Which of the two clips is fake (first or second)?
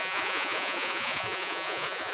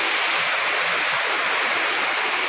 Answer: first